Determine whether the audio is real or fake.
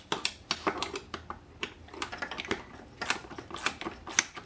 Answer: real